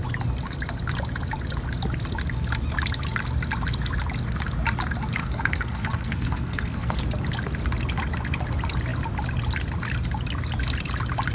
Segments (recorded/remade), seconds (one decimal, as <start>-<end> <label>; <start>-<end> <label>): 0.0-5.2 recorded; 5.2-7.0 remade; 7.0-11.3 recorded